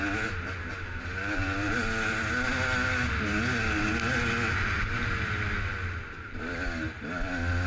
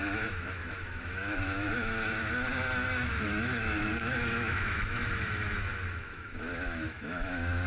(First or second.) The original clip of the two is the first